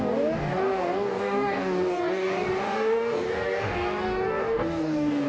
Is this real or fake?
fake